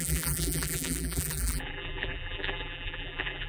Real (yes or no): no